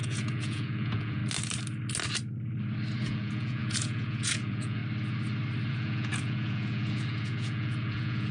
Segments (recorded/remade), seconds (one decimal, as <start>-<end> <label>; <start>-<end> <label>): 0.0-1.2 remade; 1.2-3.0 recorded; 3.0-4.8 remade; 4.8-5.7 recorded; 5.7-8.3 remade